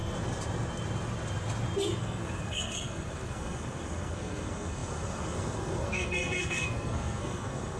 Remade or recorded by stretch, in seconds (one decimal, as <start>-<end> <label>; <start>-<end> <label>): 0.0-2.0 recorded; 2.0-7.8 remade